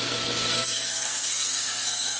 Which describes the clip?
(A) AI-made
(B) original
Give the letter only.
A